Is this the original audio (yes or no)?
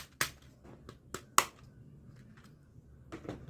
yes